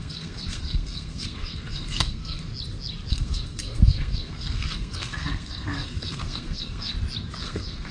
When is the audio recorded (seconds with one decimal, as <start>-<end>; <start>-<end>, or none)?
2.5-3.1; 6.9-7.4